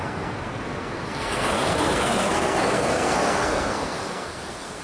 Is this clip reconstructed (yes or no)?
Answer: yes